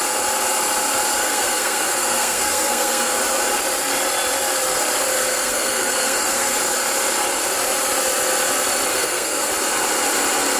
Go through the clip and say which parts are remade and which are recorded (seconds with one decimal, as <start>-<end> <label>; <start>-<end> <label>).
0.0-1.2 recorded; 1.2-3.2 remade; 3.2-5.3 recorded; 5.3-6.6 remade; 6.6-8.9 recorded; 8.9-9.5 remade; 9.5-10.6 recorded